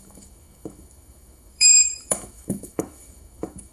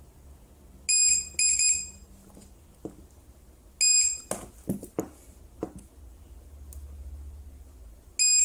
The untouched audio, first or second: second